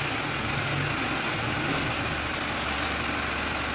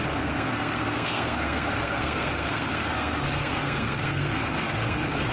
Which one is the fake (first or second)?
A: second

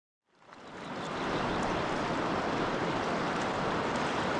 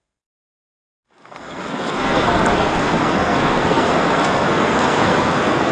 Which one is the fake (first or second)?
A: second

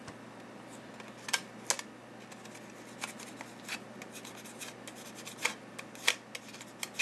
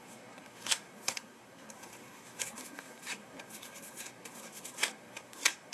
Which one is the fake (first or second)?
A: second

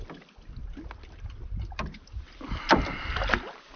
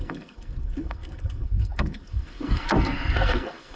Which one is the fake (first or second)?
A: second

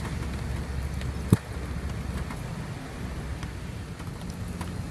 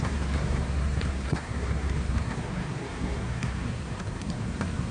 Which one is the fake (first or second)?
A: second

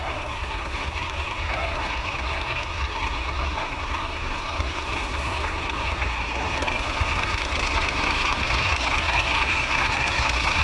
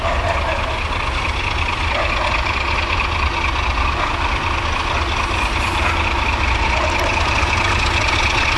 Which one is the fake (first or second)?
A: first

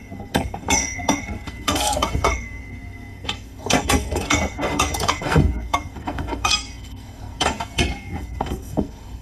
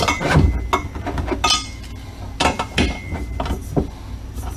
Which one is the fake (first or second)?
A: first